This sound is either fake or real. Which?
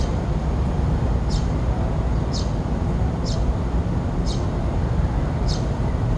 real